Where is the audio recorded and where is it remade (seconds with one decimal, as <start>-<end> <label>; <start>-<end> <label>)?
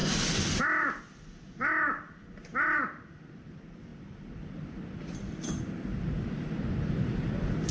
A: 0.0-7.7 recorded